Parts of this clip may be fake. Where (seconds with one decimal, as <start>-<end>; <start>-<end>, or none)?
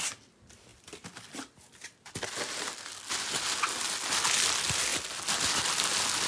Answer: none